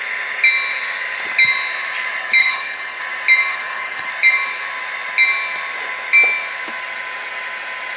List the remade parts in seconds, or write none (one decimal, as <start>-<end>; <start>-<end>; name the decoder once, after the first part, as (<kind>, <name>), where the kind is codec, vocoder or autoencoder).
2.4-3.0 (codec, HILCodec); 3.5-4.1